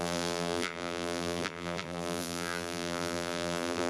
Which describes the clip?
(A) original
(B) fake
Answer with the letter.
B